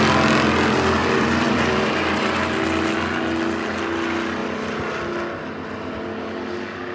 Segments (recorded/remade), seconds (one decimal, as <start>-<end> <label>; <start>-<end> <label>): 0.0-1.0 recorded; 1.0-2.2 remade; 2.2-6.9 recorded